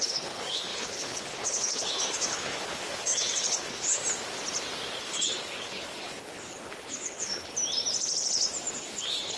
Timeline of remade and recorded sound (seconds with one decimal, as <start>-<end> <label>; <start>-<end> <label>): 0.0-4.0 remade; 4.0-5.0 recorded; 5.0-7.5 remade; 7.5-8.7 recorded; 8.7-9.4 remade